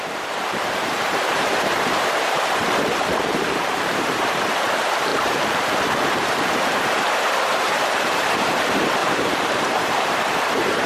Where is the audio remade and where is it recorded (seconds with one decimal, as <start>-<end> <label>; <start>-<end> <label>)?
0.0-10.9 remade